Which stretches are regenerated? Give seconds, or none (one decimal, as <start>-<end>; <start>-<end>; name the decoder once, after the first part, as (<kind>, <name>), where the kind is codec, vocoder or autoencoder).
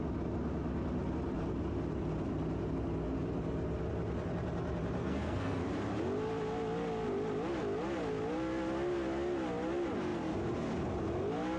5.0-5.6 (codec, SNAC)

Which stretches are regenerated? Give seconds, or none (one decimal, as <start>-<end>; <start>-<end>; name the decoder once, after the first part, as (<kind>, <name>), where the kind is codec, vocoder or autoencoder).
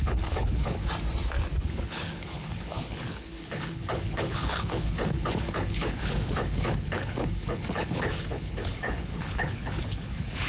0.0-0.8 (codec, HILCodec); 1.6-10.5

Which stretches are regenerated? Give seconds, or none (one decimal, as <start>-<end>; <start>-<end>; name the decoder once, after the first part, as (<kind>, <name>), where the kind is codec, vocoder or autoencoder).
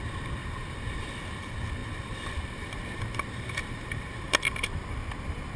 0.4-1.1 (vocoder, BigVGAN v2); 1.8-4.9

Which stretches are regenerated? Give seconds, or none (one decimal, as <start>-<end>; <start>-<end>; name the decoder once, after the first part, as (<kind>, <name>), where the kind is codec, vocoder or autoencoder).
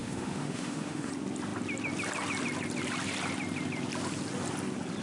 0.0-1.1 (autoencoder, DAC-VAE)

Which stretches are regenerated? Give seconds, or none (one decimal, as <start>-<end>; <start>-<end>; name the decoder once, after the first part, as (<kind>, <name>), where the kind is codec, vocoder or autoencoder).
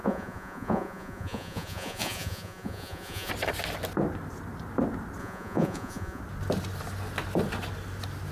0.0-3.3 (vocoder, Vocos); 5.2-6.2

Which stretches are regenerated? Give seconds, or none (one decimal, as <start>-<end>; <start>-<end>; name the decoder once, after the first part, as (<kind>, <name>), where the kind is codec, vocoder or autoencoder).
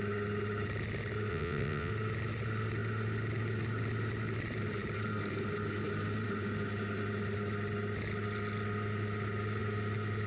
1.3-1.9 (vocoder, WaveNeXt)